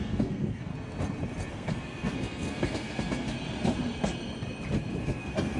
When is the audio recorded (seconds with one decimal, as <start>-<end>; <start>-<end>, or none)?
0.7-1.5; 3.3-5.0